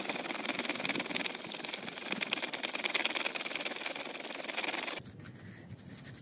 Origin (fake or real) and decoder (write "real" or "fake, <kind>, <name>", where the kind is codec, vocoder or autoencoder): real